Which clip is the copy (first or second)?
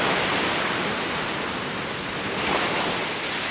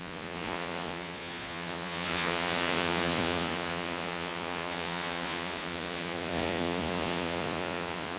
second